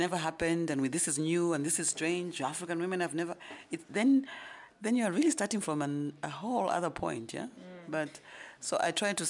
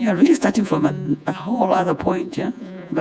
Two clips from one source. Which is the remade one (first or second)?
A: second